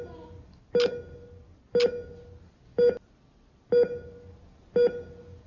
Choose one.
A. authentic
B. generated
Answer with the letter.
A